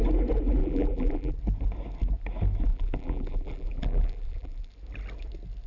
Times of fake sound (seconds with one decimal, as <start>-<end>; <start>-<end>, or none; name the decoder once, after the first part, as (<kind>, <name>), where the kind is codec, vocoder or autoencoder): 0.6-1.4 (vocoder, BigVGAN v2); 2.7-4.7